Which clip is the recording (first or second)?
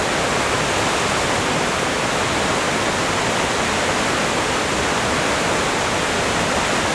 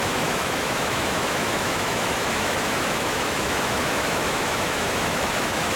first